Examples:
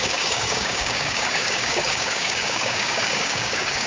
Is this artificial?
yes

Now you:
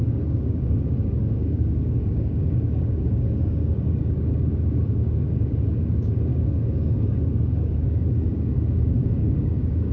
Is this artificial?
yes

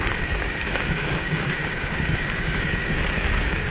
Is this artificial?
yes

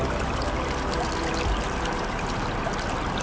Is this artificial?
no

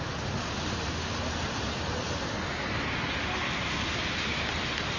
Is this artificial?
no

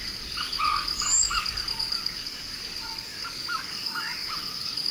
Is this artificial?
yes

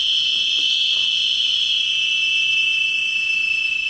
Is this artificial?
no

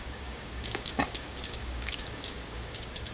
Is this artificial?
yes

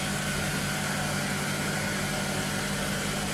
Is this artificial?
no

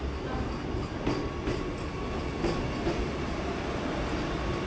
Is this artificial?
no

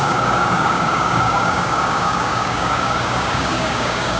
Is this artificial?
yes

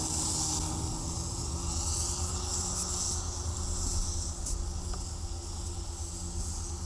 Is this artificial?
no